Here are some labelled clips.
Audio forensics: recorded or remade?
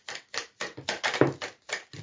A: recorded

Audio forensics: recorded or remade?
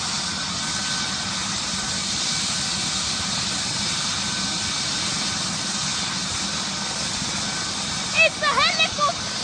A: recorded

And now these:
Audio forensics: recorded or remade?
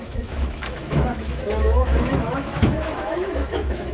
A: remade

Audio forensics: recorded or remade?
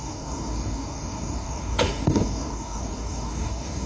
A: remade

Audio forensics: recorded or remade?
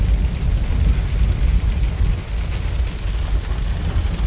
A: recorded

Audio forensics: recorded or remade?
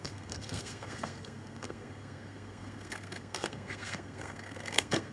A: remade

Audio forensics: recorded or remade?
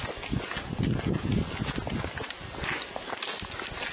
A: recorded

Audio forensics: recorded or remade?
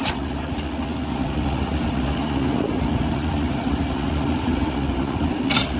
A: remade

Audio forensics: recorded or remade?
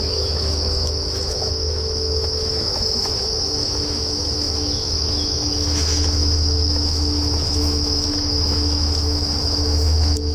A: remade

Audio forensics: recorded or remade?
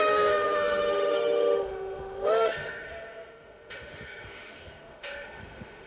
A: remade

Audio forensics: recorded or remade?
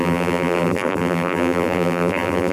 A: remade